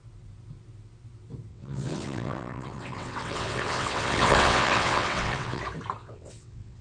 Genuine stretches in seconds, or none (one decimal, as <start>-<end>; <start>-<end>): 0.0-1.5; 5.6-6.0